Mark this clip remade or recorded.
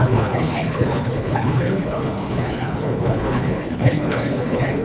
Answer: remade